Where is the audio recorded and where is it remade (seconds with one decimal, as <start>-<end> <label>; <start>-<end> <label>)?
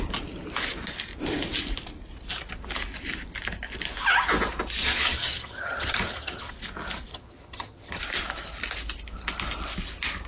0.0-4.8 recorded; 4.8-6.5 remade; 6.5-7.1 recorded; 7.1-8.0 remade; 8.0-10.3 recorded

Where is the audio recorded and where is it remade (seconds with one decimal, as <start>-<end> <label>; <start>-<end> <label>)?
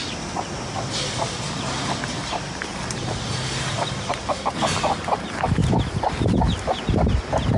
0.0-7.6 recorded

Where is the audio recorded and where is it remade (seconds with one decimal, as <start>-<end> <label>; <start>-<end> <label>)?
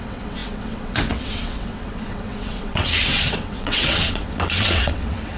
0.0-5.4 remade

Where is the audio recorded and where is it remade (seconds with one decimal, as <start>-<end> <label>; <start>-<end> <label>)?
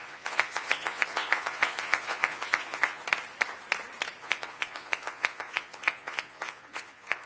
0.0-3.0 remade; 3.0-4.2 recorded; 4.2-7.3 remade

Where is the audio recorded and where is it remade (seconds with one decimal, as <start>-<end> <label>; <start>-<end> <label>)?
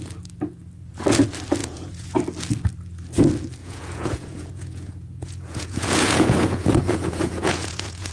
0.0-1.6 recorded; 1.6-2.2 remade; 2.2-3.6 recorded; 3.6-8.1 remade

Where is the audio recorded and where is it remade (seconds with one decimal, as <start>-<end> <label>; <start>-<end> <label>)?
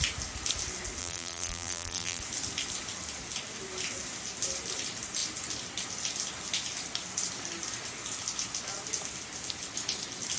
0.0-1.0 recorded; 1.0-2.2 remade; 2.2-10.4 recorded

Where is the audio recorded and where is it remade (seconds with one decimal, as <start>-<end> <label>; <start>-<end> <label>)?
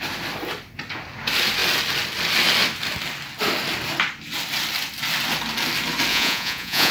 0.0-6.1 recorded; 6.1-6.9 remade